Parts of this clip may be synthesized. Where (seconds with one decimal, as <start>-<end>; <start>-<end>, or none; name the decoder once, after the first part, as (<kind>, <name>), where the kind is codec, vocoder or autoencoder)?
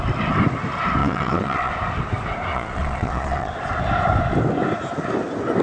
1.0-1.7 (vocoder, Vocos); 2.5-3.5